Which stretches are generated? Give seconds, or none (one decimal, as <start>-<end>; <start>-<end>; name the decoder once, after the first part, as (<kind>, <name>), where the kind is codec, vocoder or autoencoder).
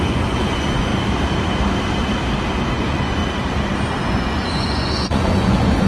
0.0-0.9 (vocoder, Vocos); 2.7-3.2; 3.8-5.9